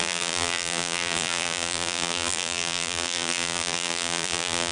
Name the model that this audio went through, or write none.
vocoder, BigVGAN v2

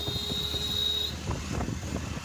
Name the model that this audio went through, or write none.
none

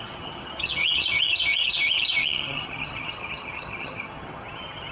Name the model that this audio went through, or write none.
vocoder, HiFi-GAN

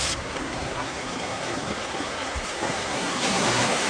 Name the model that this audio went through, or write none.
codec, SNAC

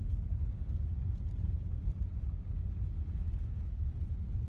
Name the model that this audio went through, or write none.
none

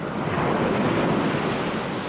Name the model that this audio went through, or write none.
none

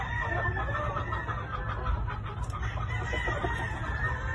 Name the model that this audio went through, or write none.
none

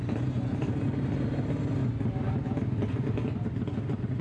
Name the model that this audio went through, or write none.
none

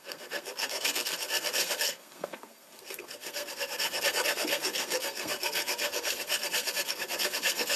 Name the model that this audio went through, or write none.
codec, SNAC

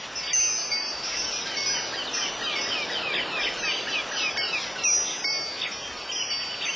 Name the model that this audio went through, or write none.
none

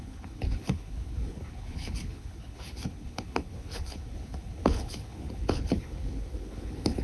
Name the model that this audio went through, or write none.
codec, HILCodec